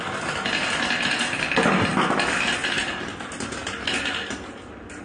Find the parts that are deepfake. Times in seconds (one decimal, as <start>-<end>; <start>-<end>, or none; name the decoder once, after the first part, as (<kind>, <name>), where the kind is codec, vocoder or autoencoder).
none